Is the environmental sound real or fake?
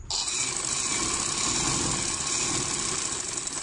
real